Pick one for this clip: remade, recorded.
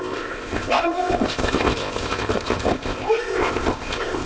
remade